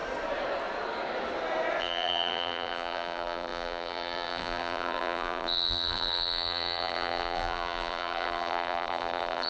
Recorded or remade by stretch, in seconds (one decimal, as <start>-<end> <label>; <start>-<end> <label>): 0.0-1.8 recorded; 1.8-9.5 remade